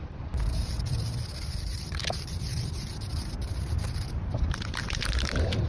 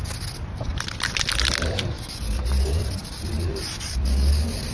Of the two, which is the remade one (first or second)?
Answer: first